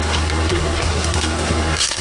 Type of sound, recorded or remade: remade